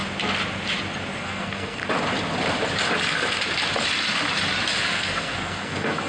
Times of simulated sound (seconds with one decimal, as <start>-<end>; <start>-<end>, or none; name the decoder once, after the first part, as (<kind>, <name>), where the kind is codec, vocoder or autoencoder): 1.2-1.8 (codec, SNAC); 4.8-6.1